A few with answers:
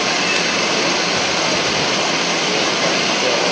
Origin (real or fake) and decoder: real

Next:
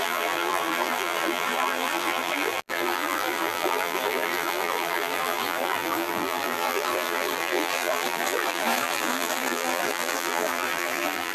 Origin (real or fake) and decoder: fake, vocoder, BigVGAN v2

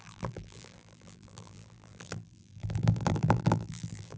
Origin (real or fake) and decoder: fake, vocoder, BigVGAN v2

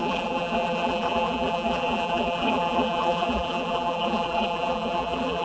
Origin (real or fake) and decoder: fake, vocoder, BigVGAN v2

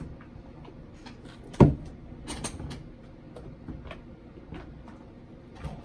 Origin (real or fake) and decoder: real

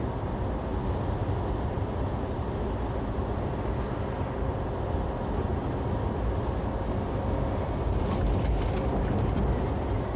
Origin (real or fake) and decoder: real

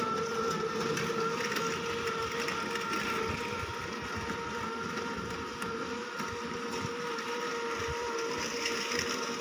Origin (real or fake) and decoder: real